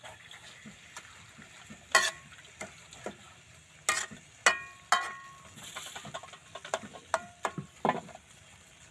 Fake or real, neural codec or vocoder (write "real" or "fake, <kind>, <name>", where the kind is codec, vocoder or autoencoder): real